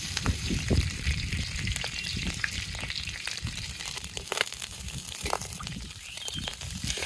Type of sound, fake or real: fake